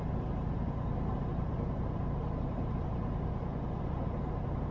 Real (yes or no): no